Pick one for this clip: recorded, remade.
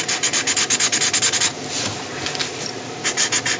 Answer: recorded